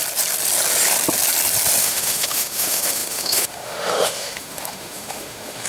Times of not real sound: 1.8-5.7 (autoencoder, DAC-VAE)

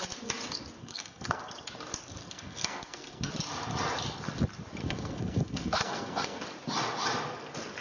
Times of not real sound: 0.8-1.4 (codec, SNAC); 2.2-3.3; 4.8-6.4

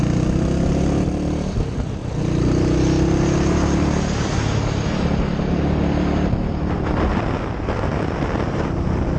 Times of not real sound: none

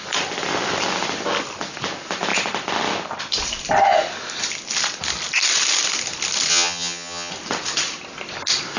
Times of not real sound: 6.5-7.3 (vocoder, HiFi-GAN)

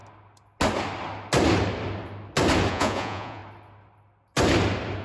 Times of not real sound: 2.7-3.4 (vocoder, Vocos)